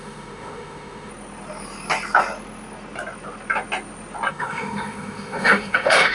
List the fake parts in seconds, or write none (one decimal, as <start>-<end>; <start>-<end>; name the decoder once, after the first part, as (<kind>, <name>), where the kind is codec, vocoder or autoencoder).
0.0-1.1 (autoencoder, DAC-VAE); 4.3-6.1